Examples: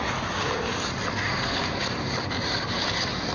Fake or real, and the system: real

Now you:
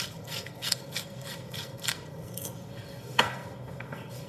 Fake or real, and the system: fake, codec, SNAC